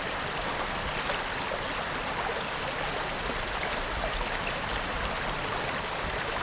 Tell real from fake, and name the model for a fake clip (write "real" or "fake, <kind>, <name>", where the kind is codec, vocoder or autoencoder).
real